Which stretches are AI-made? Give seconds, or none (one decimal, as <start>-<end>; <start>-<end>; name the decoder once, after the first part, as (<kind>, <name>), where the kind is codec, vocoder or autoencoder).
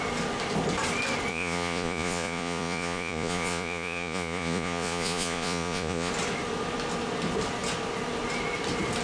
1.3-6.1 (vocoder, Vocos)